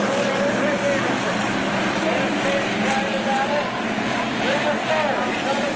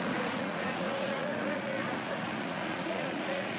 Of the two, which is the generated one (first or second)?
second